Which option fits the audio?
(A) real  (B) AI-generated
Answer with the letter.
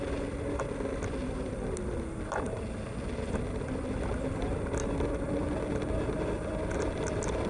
A